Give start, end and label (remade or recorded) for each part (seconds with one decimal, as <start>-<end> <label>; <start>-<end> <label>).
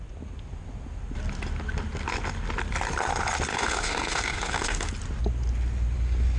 0.0-3.5 recorded; 3.5-4.9 remade; 4.9-6.4 recorded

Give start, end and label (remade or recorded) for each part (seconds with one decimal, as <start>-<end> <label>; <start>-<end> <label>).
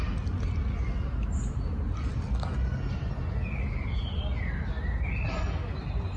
0.0-6.2 recorded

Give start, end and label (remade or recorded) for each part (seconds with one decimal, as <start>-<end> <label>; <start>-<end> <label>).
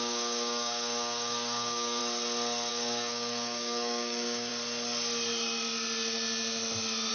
0.0-2.0 remade; 2.0-2.7 recorded; 2.7-4.5 remade; 4.5-7.1 recorded